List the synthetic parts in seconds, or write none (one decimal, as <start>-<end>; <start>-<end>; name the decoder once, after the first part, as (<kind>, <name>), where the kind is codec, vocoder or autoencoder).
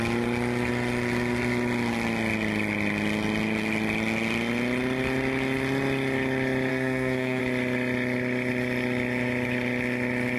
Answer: 6.7-7.4 (codec, SNAC)